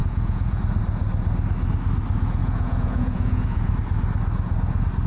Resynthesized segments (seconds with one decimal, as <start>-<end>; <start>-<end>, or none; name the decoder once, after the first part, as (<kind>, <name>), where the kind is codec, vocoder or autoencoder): 0.0-0.6 (vocoder, Vocos); 2.4-3.7